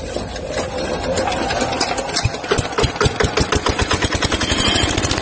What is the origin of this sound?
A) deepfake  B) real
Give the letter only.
B